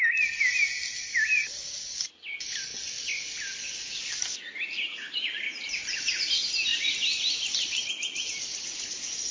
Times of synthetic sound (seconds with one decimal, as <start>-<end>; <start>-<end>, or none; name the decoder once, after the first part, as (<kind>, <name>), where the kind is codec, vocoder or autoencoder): 6.7-7.9 (vocoder, BigVGAN v2)